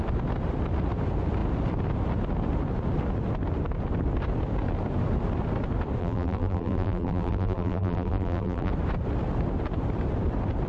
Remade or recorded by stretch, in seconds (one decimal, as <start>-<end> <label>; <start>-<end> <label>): 0.0-6.0 recorded; 6.0-8.7 remade; 8.7-10.7 recorded